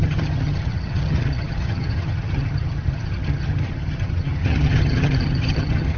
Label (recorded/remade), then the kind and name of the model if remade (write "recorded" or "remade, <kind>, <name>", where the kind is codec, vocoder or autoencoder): remade, vocoder, HiFi-GAN